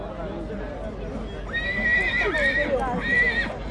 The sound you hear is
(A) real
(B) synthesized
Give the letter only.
A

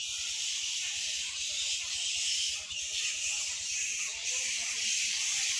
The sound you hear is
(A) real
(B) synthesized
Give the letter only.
A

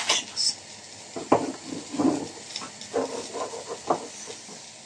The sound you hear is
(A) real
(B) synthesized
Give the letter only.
A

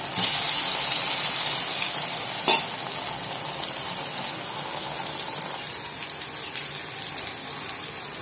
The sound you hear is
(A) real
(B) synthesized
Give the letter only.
A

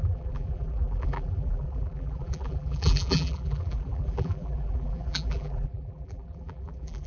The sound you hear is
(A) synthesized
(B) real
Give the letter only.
A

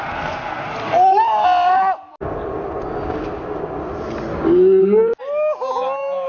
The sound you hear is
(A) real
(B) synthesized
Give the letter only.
A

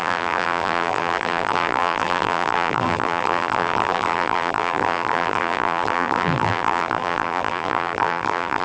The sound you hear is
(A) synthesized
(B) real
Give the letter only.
A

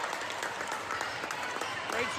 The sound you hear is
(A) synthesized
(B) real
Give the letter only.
B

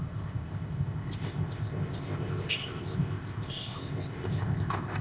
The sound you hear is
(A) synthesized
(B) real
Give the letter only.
A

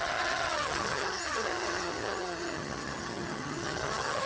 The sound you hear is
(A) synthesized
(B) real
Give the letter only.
A